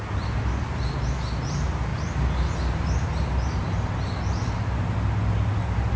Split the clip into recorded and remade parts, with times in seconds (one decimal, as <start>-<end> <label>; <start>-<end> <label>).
0.0-6.0 recorded